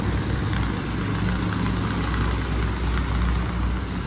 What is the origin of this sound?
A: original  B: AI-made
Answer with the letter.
A